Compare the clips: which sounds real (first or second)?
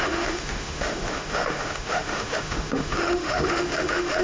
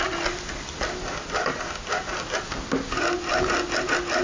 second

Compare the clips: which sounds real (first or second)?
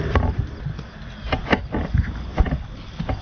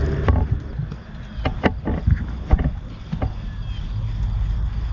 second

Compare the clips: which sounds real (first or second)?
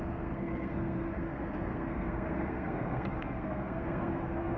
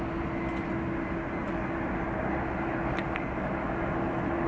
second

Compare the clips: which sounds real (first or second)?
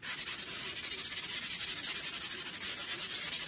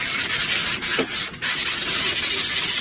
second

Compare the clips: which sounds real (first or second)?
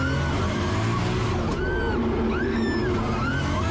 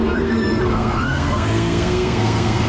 first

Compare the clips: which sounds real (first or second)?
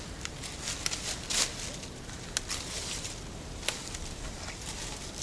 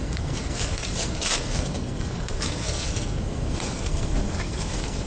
first